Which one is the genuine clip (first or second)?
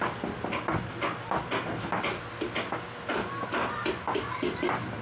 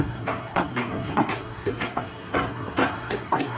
first